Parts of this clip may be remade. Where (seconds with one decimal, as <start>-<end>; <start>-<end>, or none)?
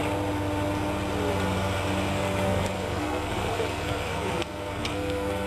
2.1-5.5